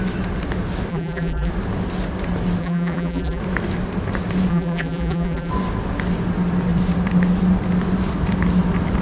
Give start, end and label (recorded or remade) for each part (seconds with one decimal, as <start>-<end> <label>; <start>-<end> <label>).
0.0-0.9 recorded; 0.9-1.5 remade; 1.5-2.6 recorded; 2.6-3.4 remade; 3.4-4.5 recorded; 4.5-5.5 remade; 5.5-9.0 recorded